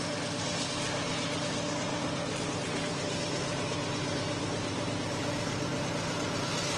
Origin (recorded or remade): recorded